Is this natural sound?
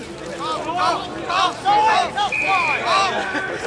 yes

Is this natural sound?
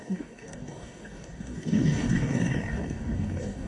no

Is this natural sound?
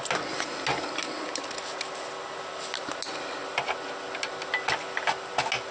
yes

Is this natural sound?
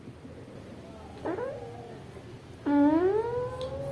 yes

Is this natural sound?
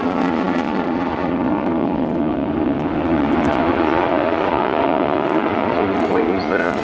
no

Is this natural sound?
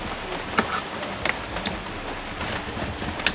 yes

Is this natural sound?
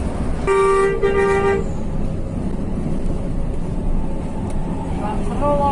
yes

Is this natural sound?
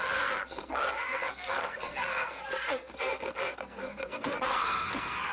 no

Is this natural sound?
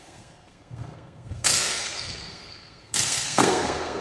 no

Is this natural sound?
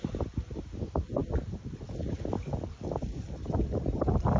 yes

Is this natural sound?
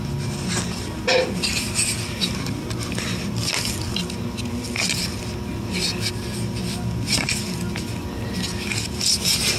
yes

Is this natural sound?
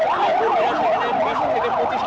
yes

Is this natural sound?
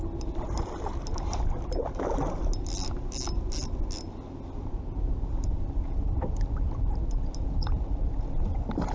yes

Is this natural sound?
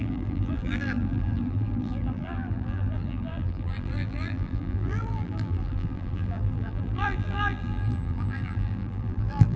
no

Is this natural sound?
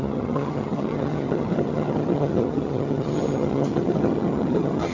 no